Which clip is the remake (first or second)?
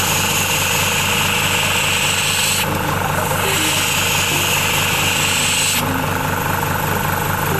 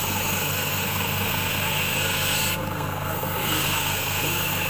second